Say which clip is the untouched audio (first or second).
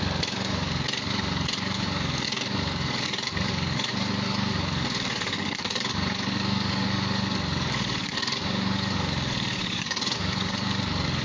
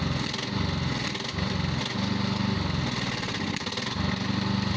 second